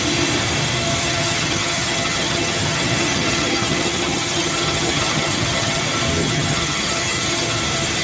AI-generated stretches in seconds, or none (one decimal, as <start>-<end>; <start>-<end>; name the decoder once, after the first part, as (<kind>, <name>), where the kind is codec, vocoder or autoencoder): 1.0-5.8 (vocoder, HiFi-GAN); 6.2-7.6